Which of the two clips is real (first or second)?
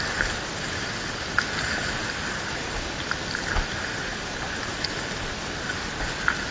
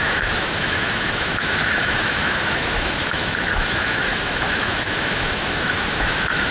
first